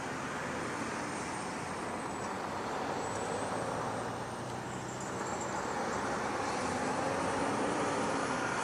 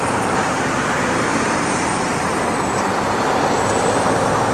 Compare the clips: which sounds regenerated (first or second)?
second